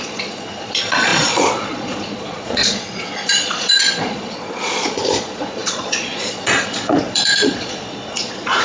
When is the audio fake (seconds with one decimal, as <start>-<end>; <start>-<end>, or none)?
0.0-8.6